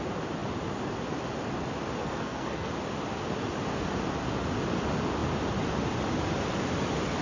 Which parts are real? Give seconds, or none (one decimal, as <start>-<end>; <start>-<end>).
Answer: 0.0-2.0; 2.7-7.2